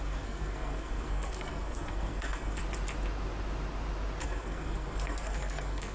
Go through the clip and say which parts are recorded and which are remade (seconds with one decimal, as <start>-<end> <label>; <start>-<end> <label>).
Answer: 0.0-2.6 remade; 2.6-4.2 recorded; 4.2-5.9 remade